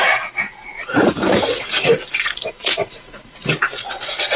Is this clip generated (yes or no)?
yes